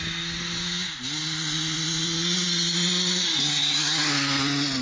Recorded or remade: recorded